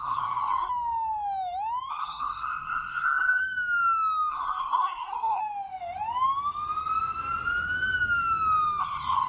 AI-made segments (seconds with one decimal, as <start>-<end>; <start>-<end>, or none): 0.0-0.7; 1.9-3.4; 4.3-5.4; 8.8-9.3